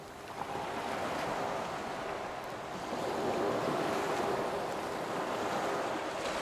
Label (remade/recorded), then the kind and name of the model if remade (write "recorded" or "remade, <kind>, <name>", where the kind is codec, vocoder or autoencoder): recorded